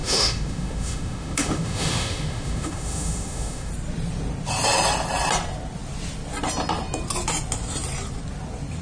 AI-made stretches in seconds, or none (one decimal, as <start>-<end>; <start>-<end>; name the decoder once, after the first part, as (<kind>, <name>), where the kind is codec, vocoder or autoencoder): 0.0-3.7 (autoencoder, DAC-VAE)